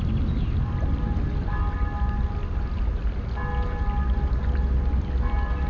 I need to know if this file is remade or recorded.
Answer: recorded